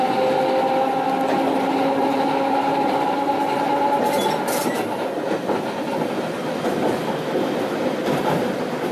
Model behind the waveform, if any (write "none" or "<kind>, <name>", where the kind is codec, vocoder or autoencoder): none